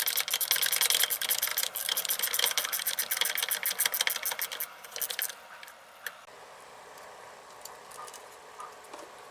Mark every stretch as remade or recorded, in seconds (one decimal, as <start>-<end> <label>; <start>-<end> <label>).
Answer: 0.0-9.3 recorded